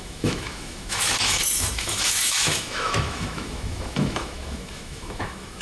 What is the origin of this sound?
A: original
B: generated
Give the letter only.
B